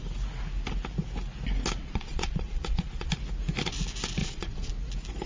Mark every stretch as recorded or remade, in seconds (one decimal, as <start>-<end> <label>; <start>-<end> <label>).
0.0-1.8 recorded; 1.8-3.1 remade; 3.1-4.2 recorded; 4.2-4.7 remade; 4.7-5.3 recorded